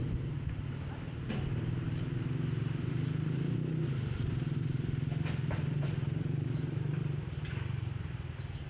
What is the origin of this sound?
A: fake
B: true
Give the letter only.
B